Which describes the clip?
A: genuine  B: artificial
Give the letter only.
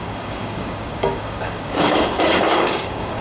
B